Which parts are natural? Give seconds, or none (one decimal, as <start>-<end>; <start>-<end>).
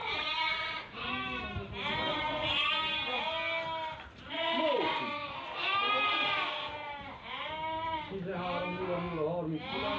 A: 1.1-2.1; 2.7-10.0